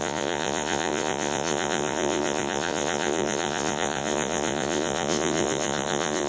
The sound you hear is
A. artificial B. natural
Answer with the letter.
A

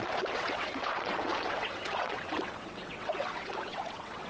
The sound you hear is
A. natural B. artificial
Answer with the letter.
B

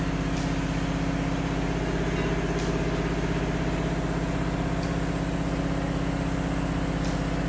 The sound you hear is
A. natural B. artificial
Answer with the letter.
A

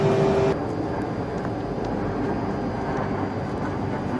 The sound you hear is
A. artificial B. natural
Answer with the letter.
B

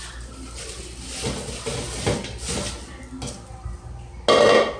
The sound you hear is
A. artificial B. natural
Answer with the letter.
B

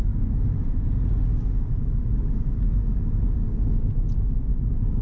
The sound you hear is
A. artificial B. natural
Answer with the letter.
B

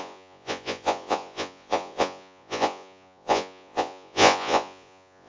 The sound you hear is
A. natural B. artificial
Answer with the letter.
B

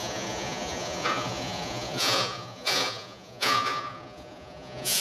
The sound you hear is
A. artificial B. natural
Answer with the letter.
A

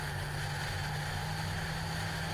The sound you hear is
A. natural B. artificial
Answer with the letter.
A